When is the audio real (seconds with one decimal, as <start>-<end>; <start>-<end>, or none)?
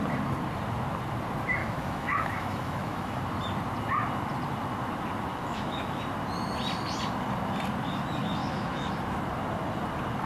0.0-1.6; 3.2-5.3; 6.0-8.4; 8.9-10.3